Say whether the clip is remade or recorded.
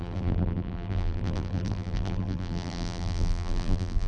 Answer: remade